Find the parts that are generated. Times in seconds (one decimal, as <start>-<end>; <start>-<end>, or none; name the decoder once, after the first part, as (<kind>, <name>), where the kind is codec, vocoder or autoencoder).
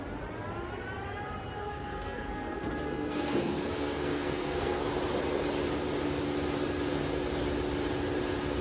1.6-4.9 (codec, SNAC)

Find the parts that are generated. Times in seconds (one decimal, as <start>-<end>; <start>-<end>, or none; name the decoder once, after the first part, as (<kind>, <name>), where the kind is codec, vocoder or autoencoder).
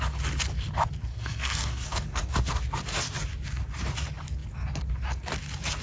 1.1-2.3 (codec, SNAC)